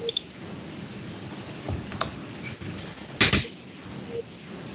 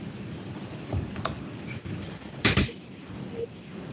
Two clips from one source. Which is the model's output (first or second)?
second